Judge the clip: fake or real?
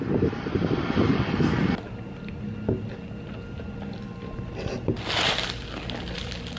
real